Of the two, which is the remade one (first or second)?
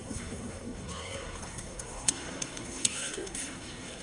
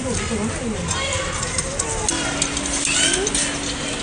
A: first